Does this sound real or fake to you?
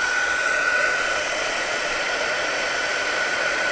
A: fake